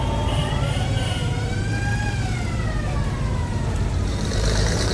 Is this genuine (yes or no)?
no